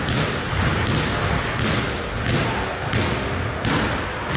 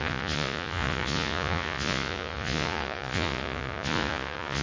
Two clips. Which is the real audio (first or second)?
first